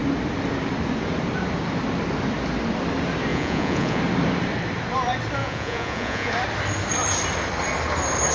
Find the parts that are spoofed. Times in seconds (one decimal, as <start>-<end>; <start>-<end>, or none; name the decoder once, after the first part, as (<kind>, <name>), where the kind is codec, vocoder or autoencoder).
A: 3.3-4.0 (vocoder, Vocos); 5.4-6.3